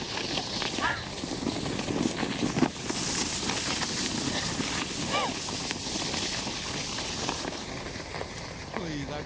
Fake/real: real